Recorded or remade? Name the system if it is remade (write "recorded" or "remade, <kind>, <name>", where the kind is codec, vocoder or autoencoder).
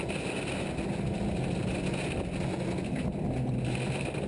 recorded